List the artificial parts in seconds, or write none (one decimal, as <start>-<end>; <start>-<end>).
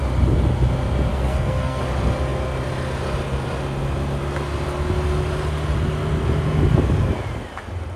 1.1-1.8